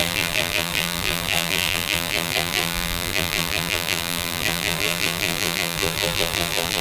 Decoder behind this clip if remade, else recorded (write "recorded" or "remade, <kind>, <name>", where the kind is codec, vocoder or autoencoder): remade, vocoder, BigVGAN v2